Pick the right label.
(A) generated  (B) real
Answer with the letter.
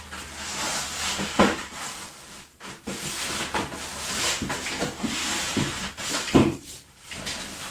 A